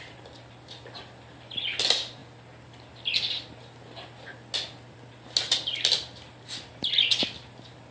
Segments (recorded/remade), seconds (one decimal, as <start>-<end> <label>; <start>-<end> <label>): 0.0-7.9 recorded

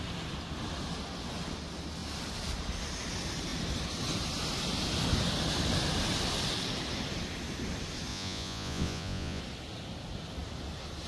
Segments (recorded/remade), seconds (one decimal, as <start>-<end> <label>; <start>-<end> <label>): 0.0-8.1 recorded; 8.1-9.4 remade; 9.4-11.1 recorded

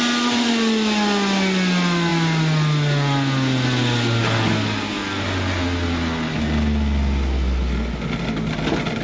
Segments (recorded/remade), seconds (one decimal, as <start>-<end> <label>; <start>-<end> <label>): 0.0-9.0 recorded

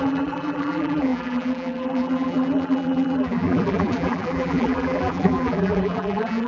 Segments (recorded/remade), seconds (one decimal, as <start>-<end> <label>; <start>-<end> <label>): 0.0-6.5 remade

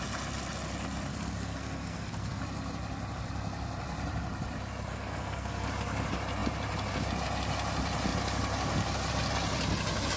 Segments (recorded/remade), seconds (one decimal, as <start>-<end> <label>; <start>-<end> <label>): 0.0-1.1 recorded; 1.1-2.4 remade; 2.4-4.9 recorded; 4.9-5.7 remade; 5.7-10.2 recorded

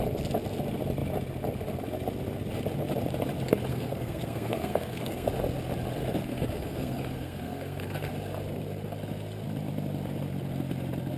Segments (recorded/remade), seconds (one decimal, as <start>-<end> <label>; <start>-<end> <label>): 0.0-3.7 recorded; 3.7-5.3 remade; 5.3-6.0 recorded; 6.0-8.1 remade; 8.1-11.2 recorded

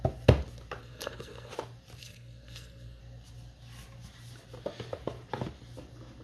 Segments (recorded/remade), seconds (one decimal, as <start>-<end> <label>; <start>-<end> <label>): 0.0-0.8 recorded; 0.8-1.5 remade; 1.5-2.0 recorded; 2.0-3.0 remade; 3.0-6.2 recorded